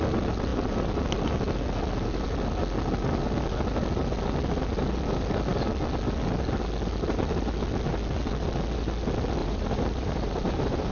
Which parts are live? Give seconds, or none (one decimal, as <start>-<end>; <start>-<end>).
0.0-9.4